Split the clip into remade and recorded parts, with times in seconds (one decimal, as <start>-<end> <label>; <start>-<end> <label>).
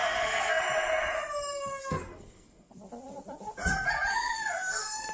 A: 0.0-0.6 remade; 0.6-1.8 recorded; 1.8-2.8 remade; 2.8-4.1 recorded; 4.1-5.1 remade